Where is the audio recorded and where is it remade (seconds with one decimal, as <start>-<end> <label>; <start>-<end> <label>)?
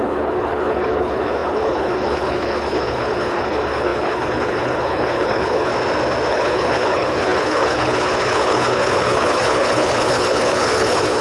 0.0-5.7 remade; 5.7-6.3 recorded; 6.3-11.2 remade